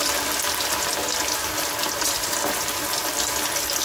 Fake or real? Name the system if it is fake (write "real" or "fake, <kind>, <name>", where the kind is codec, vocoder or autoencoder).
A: real